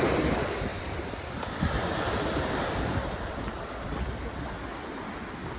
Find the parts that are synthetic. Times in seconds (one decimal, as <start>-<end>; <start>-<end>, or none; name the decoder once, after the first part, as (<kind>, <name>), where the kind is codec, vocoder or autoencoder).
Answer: 0.7-3.4 (vocoder, BigVGAN v2)

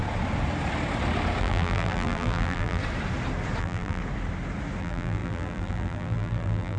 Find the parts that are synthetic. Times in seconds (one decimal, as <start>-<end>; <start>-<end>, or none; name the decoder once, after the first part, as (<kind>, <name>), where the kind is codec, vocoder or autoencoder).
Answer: 1.4-2.8 (vocoder, BigVGAN v2); 3.6-4.0; 4.8-6.8

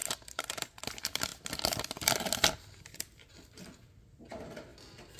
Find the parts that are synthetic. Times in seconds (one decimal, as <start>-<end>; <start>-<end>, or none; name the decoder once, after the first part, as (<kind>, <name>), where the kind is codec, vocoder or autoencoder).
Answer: 0.0-0.8 (vocoder, BigVGAN v2); 4.7-5.2

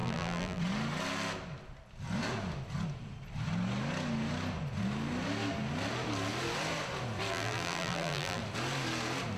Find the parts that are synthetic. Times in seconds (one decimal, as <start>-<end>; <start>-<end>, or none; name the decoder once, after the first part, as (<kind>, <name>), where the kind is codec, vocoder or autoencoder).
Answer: 0.0-0.6 (vocoder, BigVGAN v2); 7.3-8.4

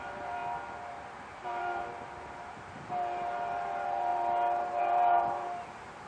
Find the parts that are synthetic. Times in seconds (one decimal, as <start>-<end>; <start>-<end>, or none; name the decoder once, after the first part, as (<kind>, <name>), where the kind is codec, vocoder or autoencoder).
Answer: 0.0-0.4 (vocoder, BigVGAN v2); 0.9-6.1

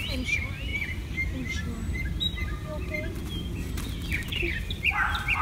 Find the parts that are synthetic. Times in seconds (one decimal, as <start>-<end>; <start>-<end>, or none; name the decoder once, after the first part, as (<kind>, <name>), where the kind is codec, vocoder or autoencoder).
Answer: 0.7-1.3 (vocoder, BigVGAN v2); 3.2-4.5